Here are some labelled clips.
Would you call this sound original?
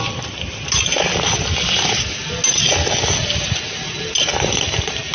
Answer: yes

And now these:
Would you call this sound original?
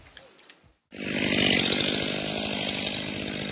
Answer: yes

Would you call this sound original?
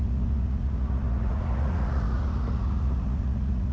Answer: no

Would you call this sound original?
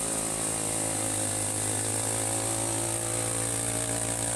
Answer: yes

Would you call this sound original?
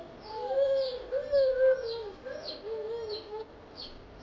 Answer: yes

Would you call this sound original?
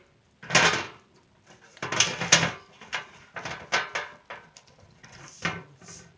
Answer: yes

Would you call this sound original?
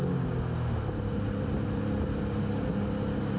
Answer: yes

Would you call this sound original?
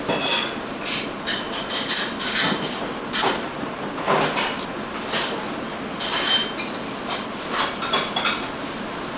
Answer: yes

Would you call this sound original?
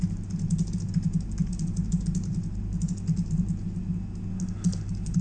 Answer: yes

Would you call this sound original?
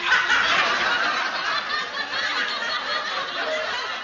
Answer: yes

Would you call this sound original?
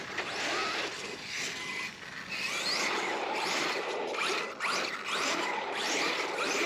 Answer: yes